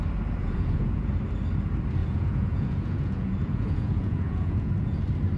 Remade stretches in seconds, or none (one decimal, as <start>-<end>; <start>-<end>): 0.4-1.1; 2.0-5.0